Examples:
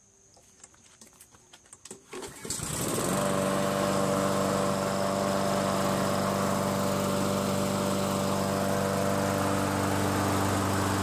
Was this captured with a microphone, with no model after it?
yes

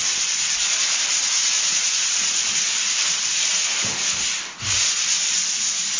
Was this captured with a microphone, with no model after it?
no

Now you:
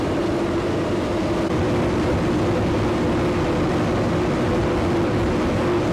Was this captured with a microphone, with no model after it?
yes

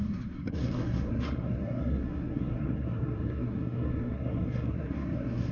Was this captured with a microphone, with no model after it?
no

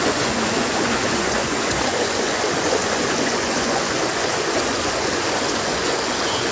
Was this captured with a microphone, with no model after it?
no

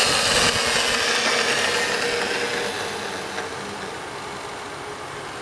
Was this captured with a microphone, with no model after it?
yes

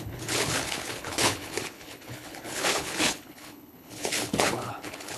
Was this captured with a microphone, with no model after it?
no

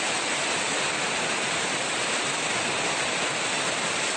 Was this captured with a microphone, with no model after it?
no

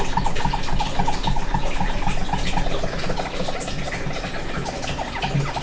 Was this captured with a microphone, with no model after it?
yes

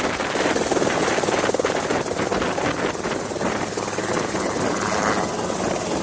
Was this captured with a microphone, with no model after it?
yes